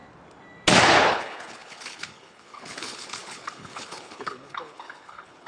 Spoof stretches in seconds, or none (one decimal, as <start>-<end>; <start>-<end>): 0.8-5.5